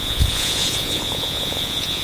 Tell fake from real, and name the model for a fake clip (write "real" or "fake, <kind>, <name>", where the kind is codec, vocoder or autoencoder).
fake, vocoder, Vocos